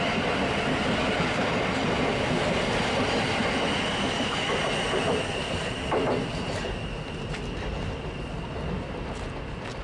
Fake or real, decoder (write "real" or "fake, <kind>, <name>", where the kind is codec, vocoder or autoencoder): real